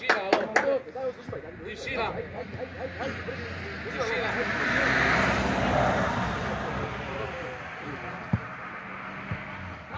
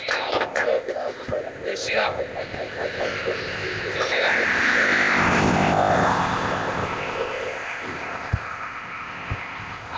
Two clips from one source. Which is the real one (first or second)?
first